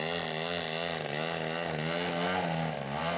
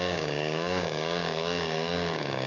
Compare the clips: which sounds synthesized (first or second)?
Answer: second